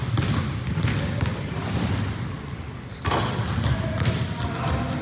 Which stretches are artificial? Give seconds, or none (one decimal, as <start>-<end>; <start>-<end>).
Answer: none